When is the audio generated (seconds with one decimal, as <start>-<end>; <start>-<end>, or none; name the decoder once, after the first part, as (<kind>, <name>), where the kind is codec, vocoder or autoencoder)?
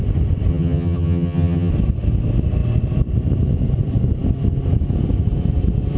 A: 0.5-1.7 (vocoder, HiFi-GAN)